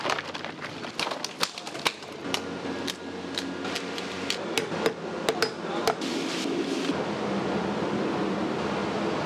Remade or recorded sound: recorded